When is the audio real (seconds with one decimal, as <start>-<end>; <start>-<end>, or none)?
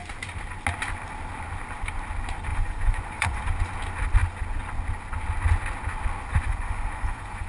0.0-2.5; 3.4-6.5